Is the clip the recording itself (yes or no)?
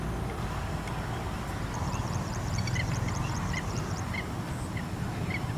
yes